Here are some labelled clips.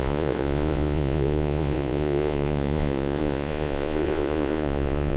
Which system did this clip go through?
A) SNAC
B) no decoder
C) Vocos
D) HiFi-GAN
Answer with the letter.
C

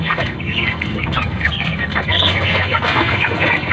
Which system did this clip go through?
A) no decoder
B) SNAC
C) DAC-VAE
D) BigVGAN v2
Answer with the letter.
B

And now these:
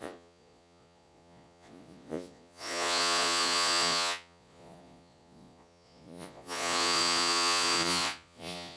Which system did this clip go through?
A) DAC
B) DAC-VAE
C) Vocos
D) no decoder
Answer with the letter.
C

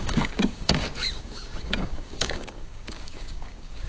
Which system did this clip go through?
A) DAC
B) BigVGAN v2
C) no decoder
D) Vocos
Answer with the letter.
A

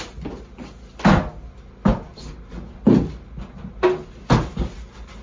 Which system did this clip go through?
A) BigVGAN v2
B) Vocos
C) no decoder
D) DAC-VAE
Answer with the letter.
C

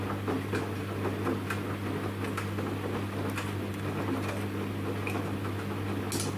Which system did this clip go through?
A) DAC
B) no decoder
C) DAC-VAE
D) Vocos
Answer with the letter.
B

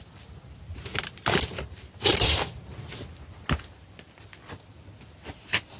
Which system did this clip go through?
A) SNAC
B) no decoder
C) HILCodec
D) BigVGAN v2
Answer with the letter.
B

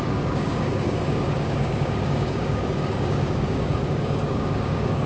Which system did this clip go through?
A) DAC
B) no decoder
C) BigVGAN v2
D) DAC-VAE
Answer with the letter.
A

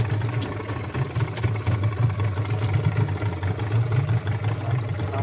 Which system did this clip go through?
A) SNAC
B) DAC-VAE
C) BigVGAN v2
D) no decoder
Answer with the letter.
D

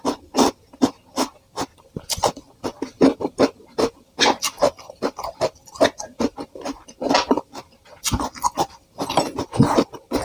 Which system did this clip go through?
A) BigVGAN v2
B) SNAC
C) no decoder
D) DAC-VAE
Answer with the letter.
C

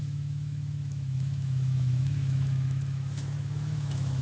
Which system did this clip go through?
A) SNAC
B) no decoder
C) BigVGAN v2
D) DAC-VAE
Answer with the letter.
D